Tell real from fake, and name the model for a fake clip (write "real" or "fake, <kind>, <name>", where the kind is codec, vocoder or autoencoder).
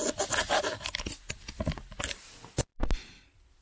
real